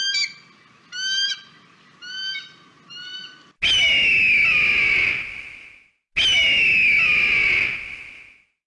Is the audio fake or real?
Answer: real